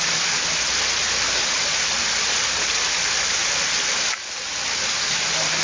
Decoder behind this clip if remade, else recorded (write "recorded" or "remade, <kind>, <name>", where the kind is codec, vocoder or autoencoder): recorded